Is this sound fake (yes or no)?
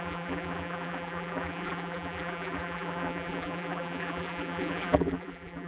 yes